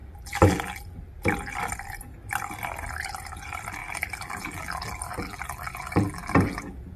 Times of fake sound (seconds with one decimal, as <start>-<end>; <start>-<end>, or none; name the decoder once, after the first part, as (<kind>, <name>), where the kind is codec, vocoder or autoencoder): 0.0-1.0 (vocoder, BigVGAN v2); 3.8-7.0